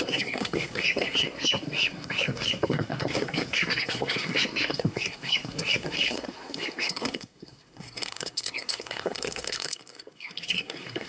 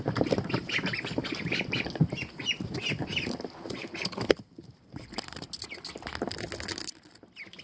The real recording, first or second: second